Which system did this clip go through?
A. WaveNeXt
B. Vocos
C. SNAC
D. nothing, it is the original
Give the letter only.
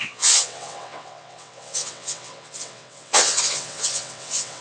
A